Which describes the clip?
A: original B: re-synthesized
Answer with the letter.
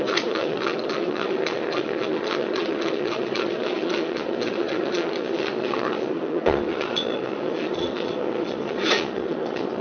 B